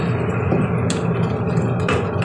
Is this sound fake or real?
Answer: real